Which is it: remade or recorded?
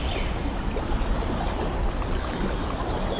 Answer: recorded